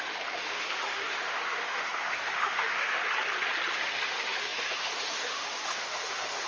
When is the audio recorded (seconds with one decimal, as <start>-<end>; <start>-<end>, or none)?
3.0-3.7